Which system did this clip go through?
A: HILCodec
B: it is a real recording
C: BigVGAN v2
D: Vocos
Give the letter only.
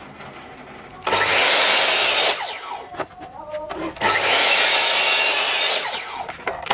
B